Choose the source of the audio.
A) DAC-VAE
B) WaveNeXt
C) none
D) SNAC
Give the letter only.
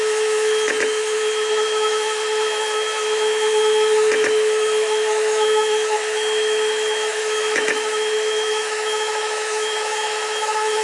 A